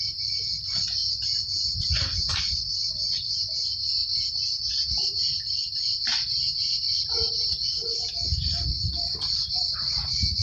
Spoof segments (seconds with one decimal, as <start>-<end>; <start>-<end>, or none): 0.0-7.8; 8.3-10.4